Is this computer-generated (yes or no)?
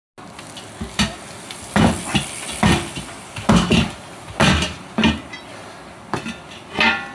no